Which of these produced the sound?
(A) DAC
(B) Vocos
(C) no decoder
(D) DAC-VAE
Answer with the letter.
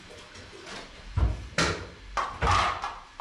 C